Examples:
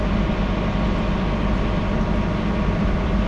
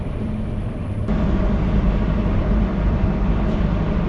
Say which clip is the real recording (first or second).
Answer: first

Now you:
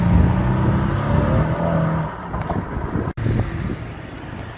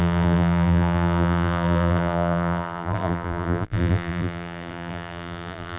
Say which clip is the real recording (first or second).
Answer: first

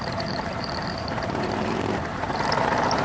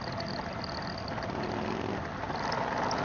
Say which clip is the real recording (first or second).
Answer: second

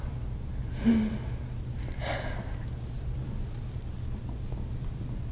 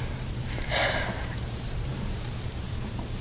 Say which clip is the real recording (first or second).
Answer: first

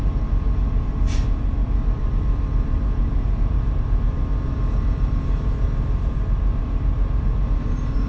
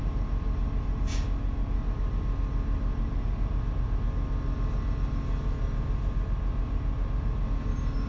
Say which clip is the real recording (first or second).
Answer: second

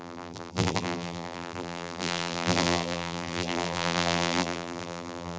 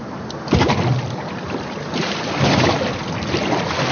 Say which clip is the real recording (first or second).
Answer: second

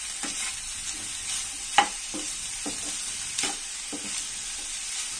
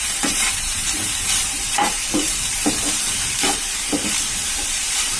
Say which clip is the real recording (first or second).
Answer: first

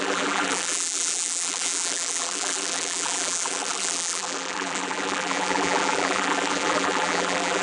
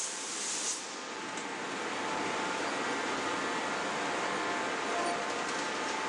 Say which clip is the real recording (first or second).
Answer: second